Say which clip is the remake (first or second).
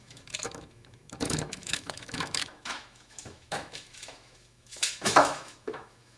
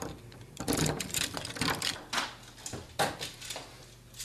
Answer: first